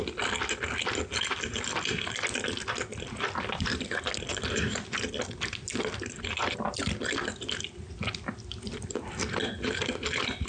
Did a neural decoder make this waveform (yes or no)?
no